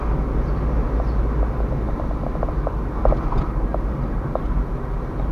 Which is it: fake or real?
real